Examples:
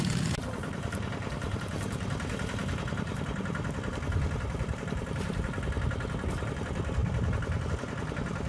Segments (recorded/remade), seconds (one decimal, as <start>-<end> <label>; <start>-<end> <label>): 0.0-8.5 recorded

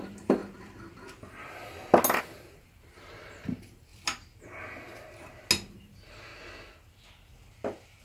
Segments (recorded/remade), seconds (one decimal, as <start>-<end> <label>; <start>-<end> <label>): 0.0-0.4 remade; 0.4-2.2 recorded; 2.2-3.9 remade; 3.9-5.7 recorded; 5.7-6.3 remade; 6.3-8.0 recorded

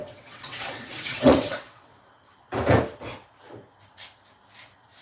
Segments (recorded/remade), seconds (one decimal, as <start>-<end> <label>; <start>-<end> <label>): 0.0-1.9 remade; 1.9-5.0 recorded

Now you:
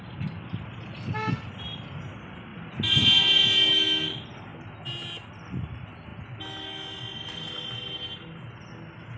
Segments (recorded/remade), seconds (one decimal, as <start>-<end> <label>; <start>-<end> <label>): 0.0-9.2 recorded

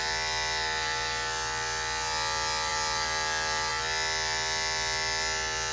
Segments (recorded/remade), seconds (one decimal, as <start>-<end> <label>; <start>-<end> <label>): 0.0-5.7 recorded

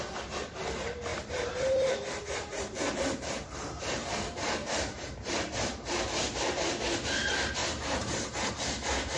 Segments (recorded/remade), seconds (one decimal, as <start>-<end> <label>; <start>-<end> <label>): 0.0-1.1 recorded; 1.1-5.7 remade; 5.7-7.6 recorded; 7.6-8.5 remade; 8.5-9.2 recorded